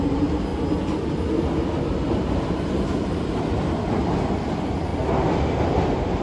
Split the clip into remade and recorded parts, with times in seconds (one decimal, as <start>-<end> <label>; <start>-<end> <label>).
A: 0.0-6.2 recorded